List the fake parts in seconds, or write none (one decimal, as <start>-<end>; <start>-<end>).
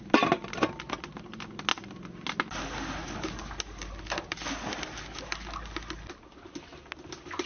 none